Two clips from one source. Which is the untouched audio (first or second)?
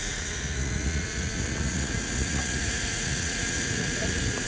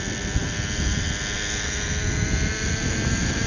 second